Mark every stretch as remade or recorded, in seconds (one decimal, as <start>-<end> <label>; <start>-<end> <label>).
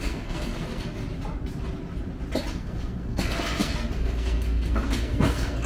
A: 0.0-1.0 remade; 1.0-2.5 recorded; 2.5-5.7 remade